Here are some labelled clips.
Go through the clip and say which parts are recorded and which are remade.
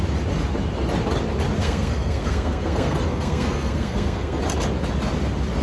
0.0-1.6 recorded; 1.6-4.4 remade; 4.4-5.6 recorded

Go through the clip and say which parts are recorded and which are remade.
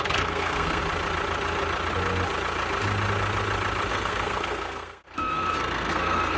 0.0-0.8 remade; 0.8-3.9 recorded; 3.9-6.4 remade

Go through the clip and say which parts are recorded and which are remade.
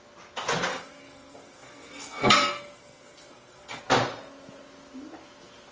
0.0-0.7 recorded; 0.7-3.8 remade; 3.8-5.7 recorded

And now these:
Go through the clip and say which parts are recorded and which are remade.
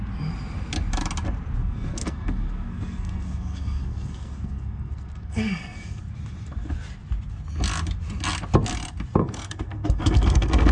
0.0-1.6 recorded; 1.6-6.0 remade; 6.0-9.2 recorded; 9.2-10.7 remade